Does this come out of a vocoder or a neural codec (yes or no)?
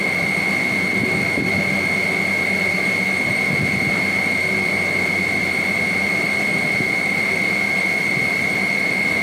yes